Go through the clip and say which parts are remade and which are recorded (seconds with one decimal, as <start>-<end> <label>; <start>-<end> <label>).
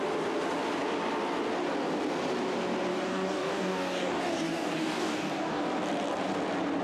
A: 0.0-2.9 recorded; 2.9-5.6 remade; 5.6-6.8 recorded